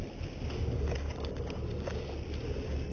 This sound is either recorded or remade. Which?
recorded